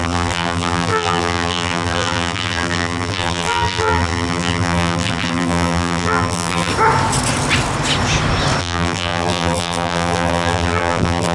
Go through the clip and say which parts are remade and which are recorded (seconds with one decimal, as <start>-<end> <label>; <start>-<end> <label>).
0.0-6.7 remade; 6.7-8.6 recorded; 8.6-11.3 remade

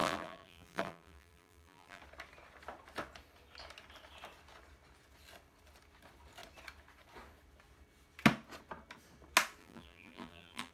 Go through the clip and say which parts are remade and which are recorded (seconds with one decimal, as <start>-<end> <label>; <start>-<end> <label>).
0.0-2.0 remade; 2.0-9.6 recorded; 9.6-10.7 remade

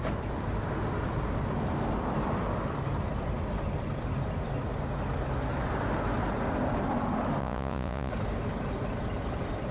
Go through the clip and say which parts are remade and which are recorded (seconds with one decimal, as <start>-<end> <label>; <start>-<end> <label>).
0.0-7.4 recorded; 7.4-8.1 remade; 8.1-9.7 recorded

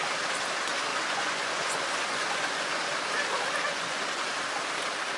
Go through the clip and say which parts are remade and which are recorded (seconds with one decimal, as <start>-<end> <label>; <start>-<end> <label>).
0.0-0.9 recorded; 0.9-2.8 remade; 2.8-3.7 recorded; 3.7-4.3 remade; 4.3-5.2 recorded